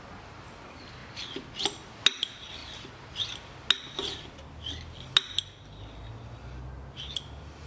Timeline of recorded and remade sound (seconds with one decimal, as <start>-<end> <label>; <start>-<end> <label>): 0.0-7.7 recorded